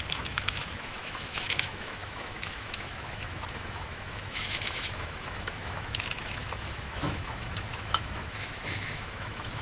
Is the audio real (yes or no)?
no